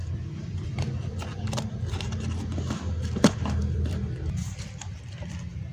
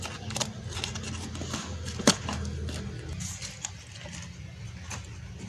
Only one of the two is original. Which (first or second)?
second